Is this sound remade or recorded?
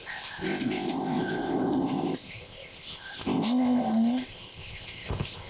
remade